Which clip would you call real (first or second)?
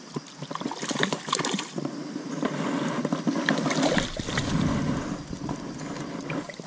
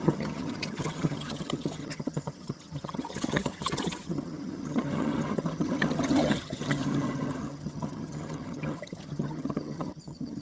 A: first